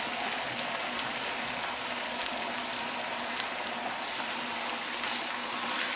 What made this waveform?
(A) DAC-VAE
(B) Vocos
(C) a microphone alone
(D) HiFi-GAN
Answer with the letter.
C